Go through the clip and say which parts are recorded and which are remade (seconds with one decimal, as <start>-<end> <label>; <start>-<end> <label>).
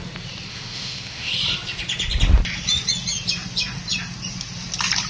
0.0-0.5 recorded; 0.5-1.3 remade; 1.3-5.1 recorded